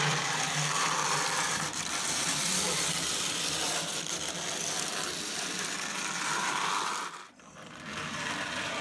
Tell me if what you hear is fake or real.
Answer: fake